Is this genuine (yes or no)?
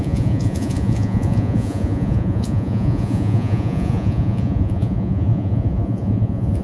no